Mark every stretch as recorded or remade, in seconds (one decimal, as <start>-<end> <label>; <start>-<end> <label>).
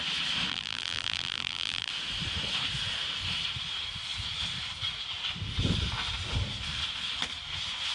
0.0-0.5 recorded; 0.5-1.9 remade; 1.9-7.9 recorded